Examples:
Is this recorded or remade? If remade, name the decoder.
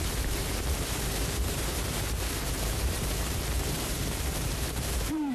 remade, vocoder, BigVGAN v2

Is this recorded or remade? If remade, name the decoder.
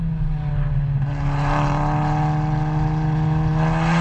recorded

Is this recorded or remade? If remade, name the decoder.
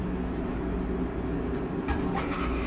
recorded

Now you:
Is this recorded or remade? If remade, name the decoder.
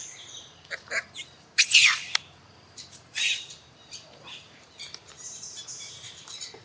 remade, vocoder, BigVGAN v2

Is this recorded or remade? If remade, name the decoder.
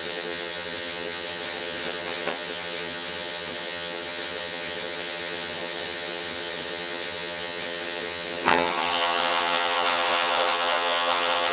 remade, vocoder, HiFi-GAN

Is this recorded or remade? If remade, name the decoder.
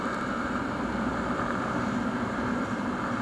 remade, vocoder, BigVGAN v2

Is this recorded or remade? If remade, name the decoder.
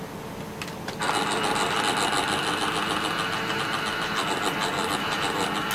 recorded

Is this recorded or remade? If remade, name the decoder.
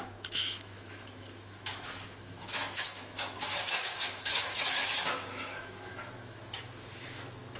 remade, autoencoder, DAC-VAE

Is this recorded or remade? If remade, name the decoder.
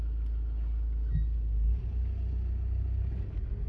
recorded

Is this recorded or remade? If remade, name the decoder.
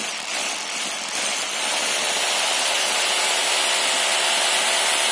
recorded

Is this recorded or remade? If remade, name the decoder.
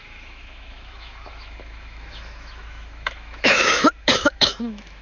remade, autoencoder, DAC-VAE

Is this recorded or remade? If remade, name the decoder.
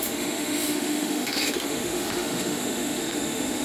remade, autoencoder, DAC-VAE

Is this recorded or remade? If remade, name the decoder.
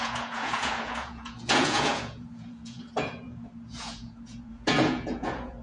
remade, vocoder, Vocos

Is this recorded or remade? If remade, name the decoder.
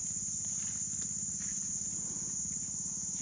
recorded